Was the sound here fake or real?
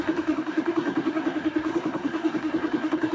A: fake